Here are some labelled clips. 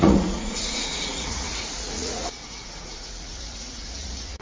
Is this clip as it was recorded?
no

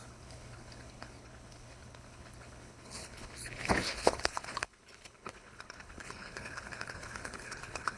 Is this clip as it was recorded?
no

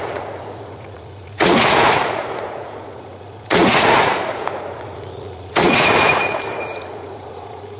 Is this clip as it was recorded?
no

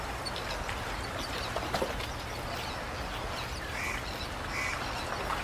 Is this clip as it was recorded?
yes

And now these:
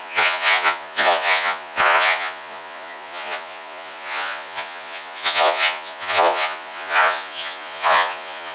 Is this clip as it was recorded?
no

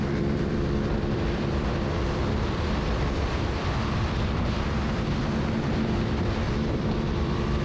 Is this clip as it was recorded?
no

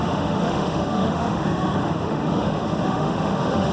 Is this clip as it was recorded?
no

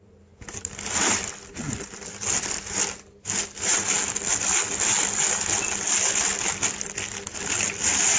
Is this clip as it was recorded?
yes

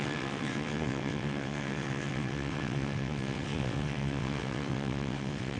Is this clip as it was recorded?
no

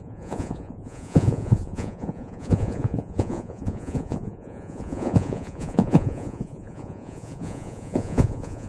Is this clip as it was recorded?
no